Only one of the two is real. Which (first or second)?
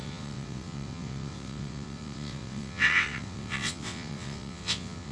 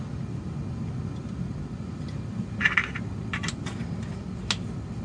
second